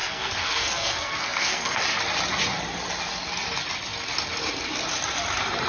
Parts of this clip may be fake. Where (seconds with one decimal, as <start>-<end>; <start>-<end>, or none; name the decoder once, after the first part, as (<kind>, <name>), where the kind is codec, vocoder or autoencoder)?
0.0-1.8 (codec, SNAC)